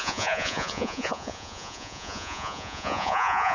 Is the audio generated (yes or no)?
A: yes